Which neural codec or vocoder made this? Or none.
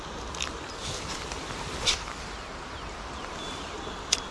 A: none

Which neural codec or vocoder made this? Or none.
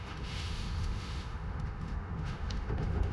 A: autoencoder, DAC-VAE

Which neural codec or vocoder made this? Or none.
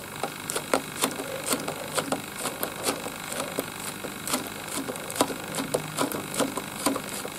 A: none